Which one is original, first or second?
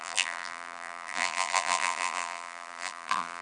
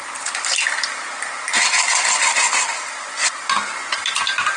second